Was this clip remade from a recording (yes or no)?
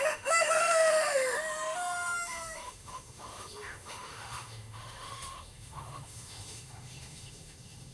yes